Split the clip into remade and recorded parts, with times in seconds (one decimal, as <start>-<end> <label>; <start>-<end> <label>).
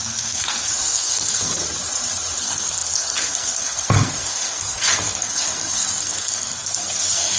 0.0-1.6 remade; 1.6-2.4 recorded; 2.4-7.4 remade